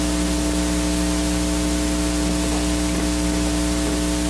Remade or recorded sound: recorded